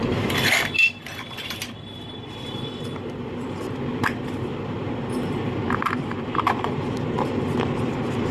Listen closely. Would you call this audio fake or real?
fake